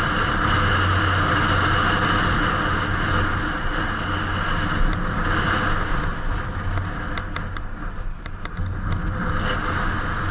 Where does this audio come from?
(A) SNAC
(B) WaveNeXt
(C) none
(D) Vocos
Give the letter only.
C